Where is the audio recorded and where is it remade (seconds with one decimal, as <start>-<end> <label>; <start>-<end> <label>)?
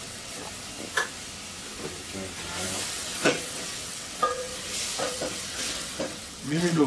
0.0-0.4 remade; 0.4-2.9 recorded; 2.9-4.5 remade; 4.5-5.0 recorded; 5.0-6.9 remade